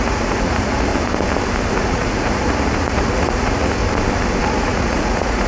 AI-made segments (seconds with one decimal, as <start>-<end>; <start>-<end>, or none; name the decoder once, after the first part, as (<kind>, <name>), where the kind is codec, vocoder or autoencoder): 0.0-0.9 (vocoder, Vocos); 1.7-3.8; 4.4-5.5

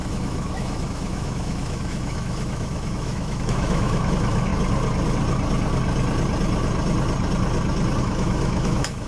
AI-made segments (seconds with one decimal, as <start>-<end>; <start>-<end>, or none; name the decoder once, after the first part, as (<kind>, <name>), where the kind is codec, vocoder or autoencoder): 0.0-4.5 (autoencoder, DAC-VAE); 8.0-9.1

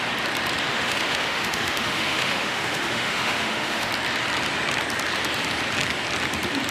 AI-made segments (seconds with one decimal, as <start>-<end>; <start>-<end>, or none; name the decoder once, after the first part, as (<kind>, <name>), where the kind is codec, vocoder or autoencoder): 0.7-3.9 (autoencoder, DAC-VAE)